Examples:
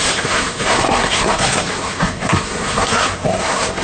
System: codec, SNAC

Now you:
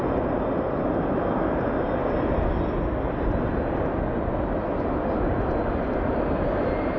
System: none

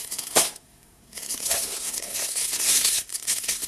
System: codec, SNAC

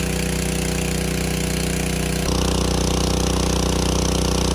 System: none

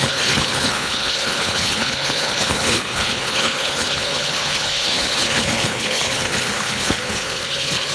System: codec, HILCodec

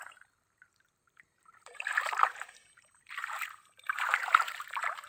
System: vocoder, BigVGAN v2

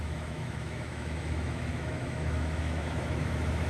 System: autoencoder, DAC-VAE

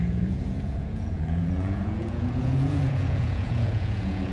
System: vocoder, Vocos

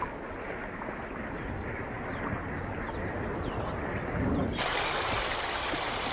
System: none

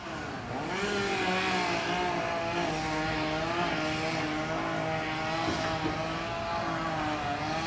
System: none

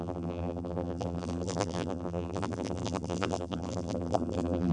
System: vocoder, BigVGAN v2